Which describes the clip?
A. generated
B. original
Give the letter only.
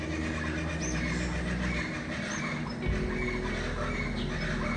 B